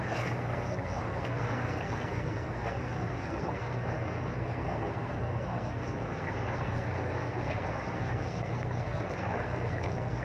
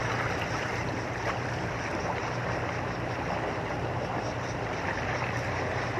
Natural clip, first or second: second